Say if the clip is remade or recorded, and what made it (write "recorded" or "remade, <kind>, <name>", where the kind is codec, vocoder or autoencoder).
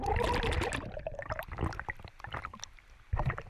recorded